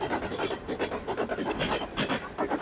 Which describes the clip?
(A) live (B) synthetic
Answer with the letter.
A